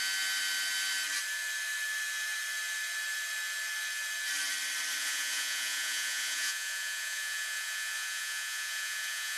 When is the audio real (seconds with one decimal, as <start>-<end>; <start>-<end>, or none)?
0.0-5.0